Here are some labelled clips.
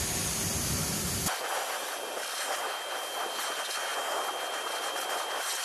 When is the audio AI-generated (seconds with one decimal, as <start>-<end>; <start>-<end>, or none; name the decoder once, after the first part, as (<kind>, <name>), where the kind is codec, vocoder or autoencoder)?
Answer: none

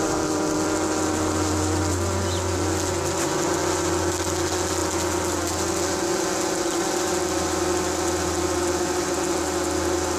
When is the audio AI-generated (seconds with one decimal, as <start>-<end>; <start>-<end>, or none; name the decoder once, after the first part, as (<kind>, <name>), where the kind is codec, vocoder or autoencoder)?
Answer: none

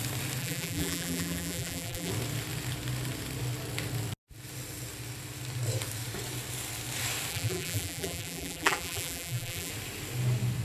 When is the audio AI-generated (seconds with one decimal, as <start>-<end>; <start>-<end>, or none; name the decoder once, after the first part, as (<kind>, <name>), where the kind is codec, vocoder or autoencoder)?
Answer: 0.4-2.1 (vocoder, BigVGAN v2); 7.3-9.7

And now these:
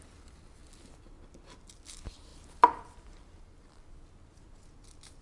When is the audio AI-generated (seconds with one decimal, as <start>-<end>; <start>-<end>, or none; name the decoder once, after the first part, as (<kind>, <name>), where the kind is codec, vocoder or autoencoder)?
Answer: 2.3-3.9 (vocoder, BigVGAN v2)

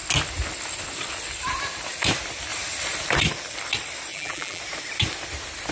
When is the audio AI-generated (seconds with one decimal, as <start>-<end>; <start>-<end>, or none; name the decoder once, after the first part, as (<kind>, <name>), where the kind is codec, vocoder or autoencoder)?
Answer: 4.1-4.6 (vocoder, BigVGAN v2)

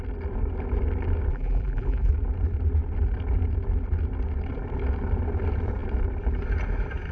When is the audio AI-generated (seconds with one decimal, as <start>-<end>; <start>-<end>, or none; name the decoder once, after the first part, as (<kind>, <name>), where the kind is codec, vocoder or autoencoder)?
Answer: 1.3-2.1 (vocoder, BigVGAN v2)

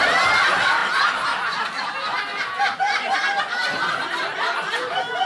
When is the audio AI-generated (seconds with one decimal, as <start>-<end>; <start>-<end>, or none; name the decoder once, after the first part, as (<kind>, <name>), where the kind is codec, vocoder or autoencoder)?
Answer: none

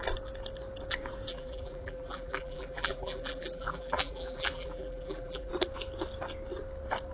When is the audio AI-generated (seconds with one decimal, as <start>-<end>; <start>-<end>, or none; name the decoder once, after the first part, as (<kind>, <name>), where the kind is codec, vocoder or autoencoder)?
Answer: 1.3-5.5 (vocoder, BigVGAN v2)